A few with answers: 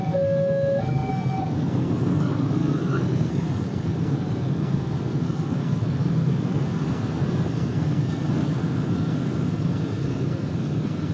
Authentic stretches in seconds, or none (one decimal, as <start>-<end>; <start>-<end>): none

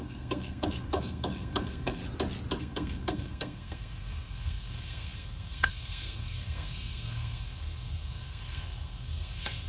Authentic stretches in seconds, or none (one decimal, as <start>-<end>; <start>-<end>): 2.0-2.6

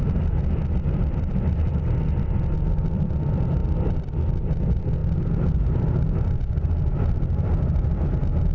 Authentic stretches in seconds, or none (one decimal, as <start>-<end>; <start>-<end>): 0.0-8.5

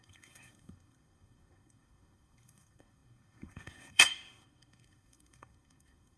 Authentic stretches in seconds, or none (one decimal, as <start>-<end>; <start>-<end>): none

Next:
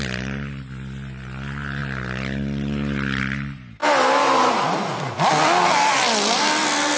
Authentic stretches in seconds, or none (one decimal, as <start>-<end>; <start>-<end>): 0.0-7.0

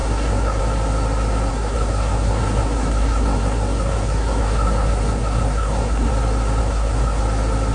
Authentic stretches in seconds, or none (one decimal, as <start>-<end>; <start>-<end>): 0.6-1.5; 6.1-6.6; 7.2-7.7

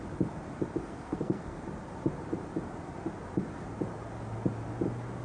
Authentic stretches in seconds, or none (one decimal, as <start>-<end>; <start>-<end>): 0.0-0.8; 1.7-5.2